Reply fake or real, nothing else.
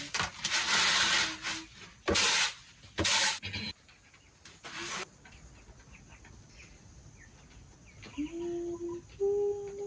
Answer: real